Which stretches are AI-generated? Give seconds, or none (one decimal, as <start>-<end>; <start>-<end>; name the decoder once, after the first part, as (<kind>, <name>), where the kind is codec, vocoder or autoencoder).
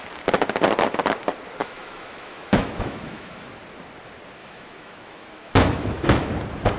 1.6-3.5 (autoencoder, DAC-VAE); 4.4-6.3